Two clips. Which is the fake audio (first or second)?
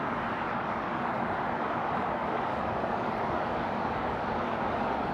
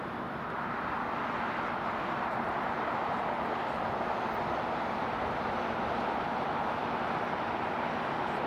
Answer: first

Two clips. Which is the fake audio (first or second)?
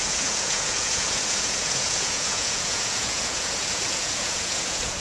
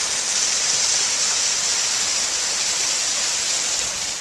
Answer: first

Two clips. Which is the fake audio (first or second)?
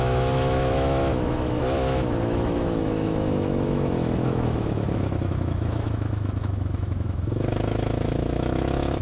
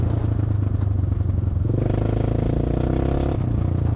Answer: first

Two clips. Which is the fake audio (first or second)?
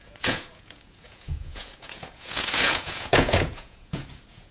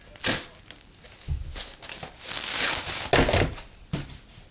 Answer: first